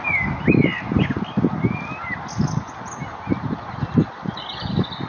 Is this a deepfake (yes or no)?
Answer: no